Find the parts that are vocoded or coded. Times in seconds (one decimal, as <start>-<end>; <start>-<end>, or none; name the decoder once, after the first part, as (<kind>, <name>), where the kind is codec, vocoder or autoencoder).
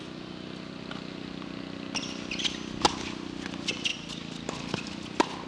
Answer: none